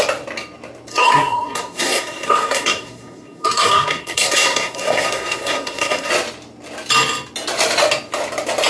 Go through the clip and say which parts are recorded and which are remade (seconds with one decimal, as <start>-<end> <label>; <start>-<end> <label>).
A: 0.0-0.9 recorded; 0.9-6.1 remade; 6.1-8.7 recorded